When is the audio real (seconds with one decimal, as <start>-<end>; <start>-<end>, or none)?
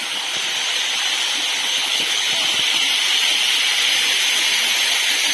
0.0-1.6; 2.3-5.3